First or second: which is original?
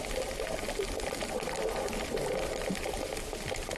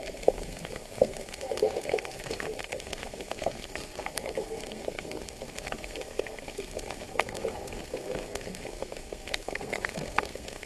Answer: first